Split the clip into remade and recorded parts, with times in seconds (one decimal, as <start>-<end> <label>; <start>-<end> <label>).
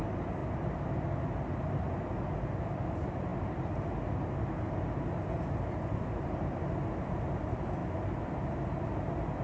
0.0-9.4 recorded